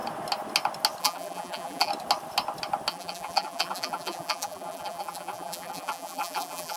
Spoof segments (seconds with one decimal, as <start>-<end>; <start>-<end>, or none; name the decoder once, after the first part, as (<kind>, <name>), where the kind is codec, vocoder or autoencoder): 1.0-1.9 (vocoder, BigVGAN v2); 2.9-6.8